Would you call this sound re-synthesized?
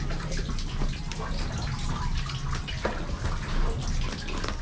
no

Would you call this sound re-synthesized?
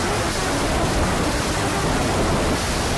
no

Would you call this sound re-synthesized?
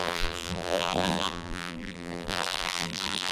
yes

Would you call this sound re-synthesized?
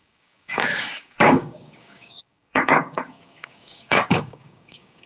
yes